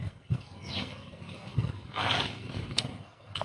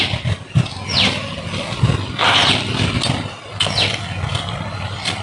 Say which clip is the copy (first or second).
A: first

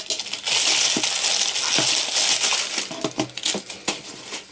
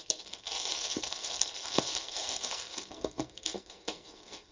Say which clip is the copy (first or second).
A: second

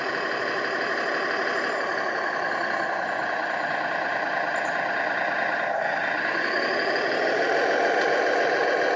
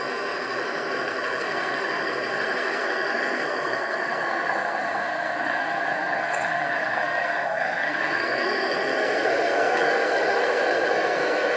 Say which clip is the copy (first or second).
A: second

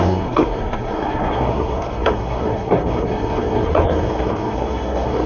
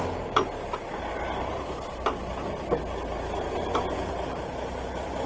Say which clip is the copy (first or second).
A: first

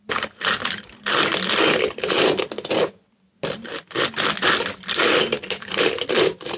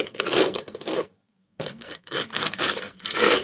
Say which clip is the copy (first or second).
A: second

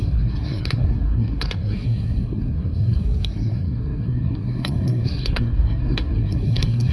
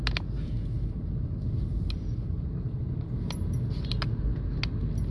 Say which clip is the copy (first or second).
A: first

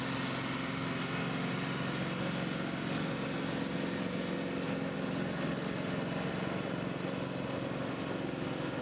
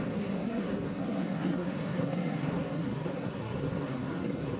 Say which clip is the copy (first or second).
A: second